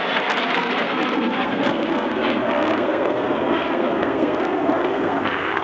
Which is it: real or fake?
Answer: fake